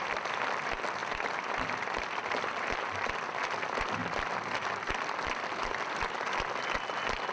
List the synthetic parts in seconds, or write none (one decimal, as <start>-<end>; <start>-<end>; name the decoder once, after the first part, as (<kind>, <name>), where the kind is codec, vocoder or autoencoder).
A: 1.0-2.7 (vocoder, BigVGAN v2); 4.0-6.6